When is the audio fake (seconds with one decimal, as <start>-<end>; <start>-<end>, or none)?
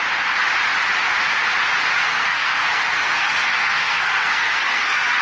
2.0-5.2